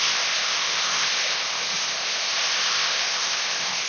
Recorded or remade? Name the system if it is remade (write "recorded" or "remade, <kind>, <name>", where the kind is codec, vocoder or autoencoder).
remade, codec, ZipCodec